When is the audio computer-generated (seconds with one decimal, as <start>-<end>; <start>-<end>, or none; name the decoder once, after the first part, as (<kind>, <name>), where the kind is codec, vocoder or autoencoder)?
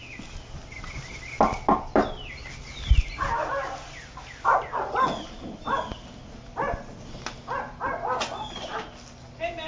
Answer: none